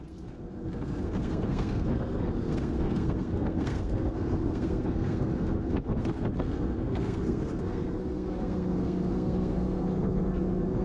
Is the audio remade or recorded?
remade